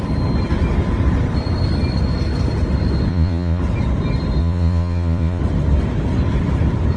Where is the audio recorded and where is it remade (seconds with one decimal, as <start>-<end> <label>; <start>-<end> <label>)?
0.0-3.1 recorded; 3.1-3.6 remade; 3.6-4.4 recorded; 4.4-5.4 remade; 5.4-7.0 recorded

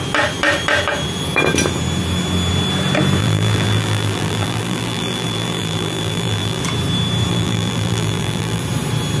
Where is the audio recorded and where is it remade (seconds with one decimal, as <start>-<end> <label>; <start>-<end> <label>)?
0.0-3.2 recorded; 3.2-6.6 remade; 6.6-7.3 recorded; 7.3-8.6 remade; 8.6-9.2 recorded

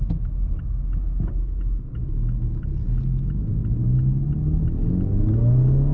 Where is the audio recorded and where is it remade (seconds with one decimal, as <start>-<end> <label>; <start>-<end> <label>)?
0.0-5.9 recorded

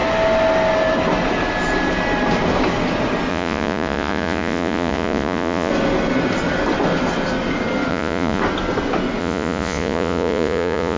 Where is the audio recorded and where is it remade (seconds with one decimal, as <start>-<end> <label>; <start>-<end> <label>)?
0.0-3.3 recorded; 3.3-5.7 remade; 5.7-7.9 recorded; 7.9-8.4 remade; 8.4-9.2 recorded; 9.2-11.0 remade